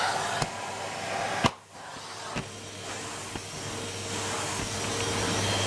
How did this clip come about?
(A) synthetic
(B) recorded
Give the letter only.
B